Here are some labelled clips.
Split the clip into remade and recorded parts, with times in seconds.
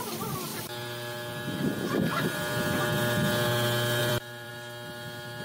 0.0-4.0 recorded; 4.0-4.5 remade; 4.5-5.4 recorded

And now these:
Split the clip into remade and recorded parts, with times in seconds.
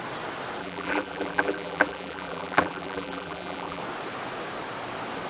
0.0-0.6 recorded; 0.6-3.8 remade; 3.8-5.3 recorded